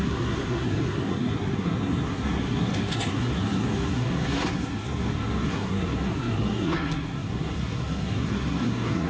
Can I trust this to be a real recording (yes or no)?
no